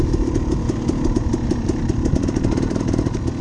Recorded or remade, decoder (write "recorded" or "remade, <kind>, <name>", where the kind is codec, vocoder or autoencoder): recorded